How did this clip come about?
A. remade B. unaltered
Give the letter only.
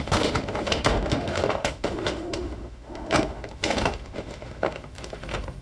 A